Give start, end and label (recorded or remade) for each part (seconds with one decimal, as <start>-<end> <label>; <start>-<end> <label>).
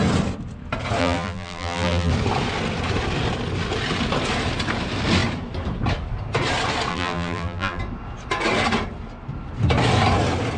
0.0-1.0 recorded; 1.0-2.1 remade; 2.1-6.9 recorded; 6.9-7.8 remade; 7.8-10.6 recorded